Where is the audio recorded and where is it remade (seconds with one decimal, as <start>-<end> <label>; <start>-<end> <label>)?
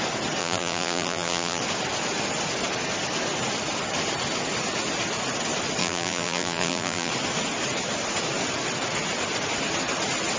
0.0-0.4 recorded; 0.4-1.6 remade; 1.6-5.8 recorded; 5.8-7.1 remade; 7.1-10.4 recorded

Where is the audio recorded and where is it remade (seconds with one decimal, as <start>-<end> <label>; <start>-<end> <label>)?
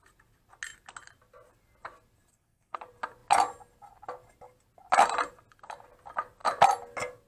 0.0-2.3 recorded; 2.3-2.8 remade; 2.8-7.3 recorded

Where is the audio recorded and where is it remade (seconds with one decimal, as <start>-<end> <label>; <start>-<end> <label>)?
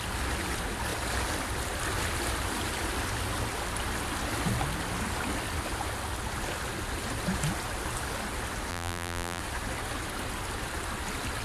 0.0-8.7 recorded; 8.7-9.4 remade; 9.4-11.4 recorded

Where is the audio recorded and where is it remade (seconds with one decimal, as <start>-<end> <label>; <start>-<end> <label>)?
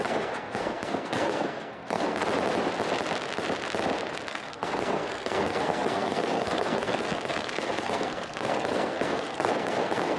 0.0-2.2 remade; 2.2-4.3 recorded; 4.3-10.2 remade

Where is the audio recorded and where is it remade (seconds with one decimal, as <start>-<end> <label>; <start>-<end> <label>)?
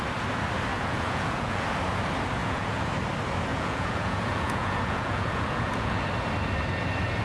0.0-0.7 recorded; 0.7-1.6 remade; 1.6-2.4 recorded; 2.4-2.9 remade; 2.9-3.5 recorded; 3.5-6.1 remade; 6.1-7.2 recorded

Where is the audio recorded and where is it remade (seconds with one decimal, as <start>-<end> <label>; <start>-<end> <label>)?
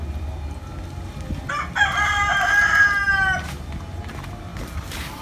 0.0-0.7 remade; 0.7-1.5 recorded; 1.5-2.1 remade; 2.1-4.1 recorded; 4.1-5.2 remade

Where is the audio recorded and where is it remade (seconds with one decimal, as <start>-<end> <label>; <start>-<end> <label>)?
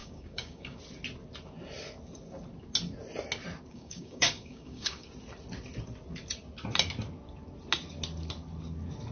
0.0-0.8 remade; 0.8-3.7 recorded; 3.7-5.1 remade; 5.1-9.1 recorded